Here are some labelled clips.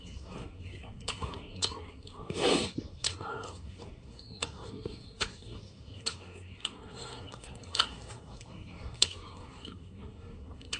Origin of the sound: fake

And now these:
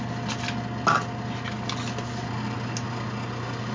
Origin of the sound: real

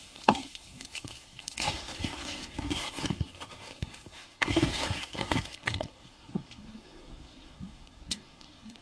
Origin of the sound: fake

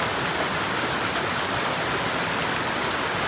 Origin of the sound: real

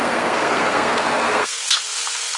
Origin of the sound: fake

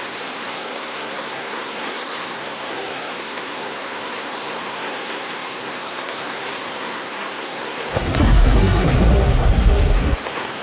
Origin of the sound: fake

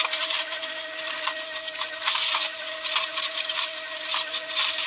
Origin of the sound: real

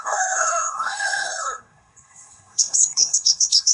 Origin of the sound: fake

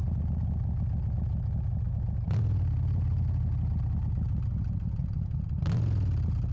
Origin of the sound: real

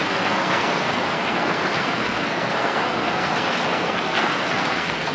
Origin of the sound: fake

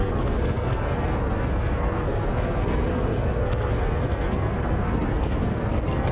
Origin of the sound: fake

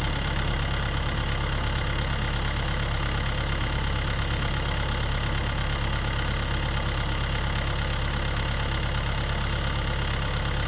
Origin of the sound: real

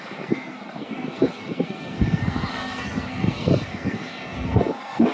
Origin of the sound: fake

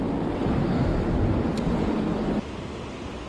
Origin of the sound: real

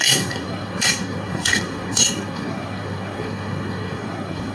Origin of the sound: fake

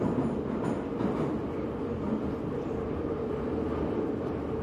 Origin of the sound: real